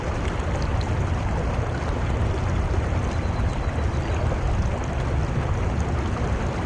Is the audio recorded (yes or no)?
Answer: yes